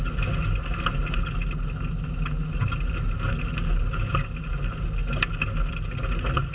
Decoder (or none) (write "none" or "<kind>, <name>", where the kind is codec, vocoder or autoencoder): none